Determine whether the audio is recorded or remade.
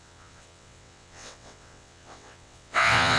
remade